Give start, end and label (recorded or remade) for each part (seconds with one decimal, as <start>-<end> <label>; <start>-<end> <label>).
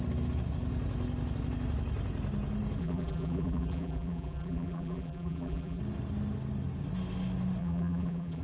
0.0-2.8 recorded; 2.8-5.8 remade; 5.8-7.6 recorded; 7.6-8.4 remade